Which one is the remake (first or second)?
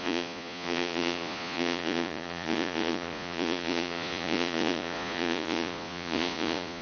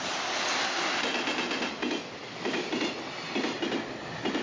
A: first